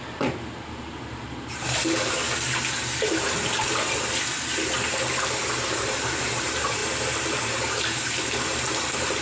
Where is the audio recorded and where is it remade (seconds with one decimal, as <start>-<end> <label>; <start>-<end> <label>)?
0.0-1.8 remade; 1.8-5.5 recorded; 5.5-6.8 remade; 6.8-9.2 recorded